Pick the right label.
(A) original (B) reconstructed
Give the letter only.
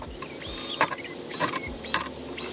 A